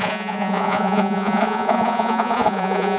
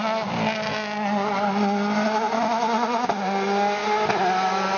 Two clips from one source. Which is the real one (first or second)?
second